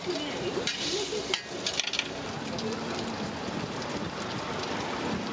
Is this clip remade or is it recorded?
recorded